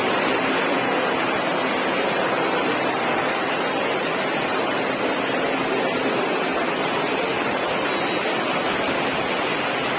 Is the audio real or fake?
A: real